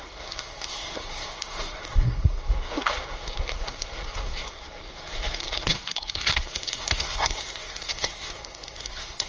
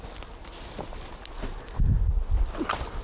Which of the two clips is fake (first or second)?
first